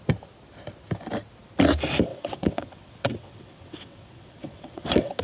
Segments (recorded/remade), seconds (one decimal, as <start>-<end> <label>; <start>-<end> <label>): 0.0-2.1 recorded; 2.1-5.2 remade